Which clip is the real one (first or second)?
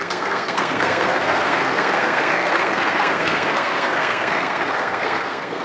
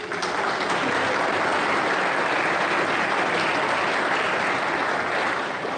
second